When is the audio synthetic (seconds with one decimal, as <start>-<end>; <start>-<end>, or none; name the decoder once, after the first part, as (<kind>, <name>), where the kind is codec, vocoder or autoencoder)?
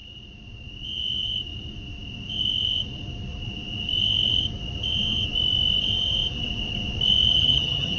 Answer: 7.3-8.0 (vocoder, HiFi-GAN)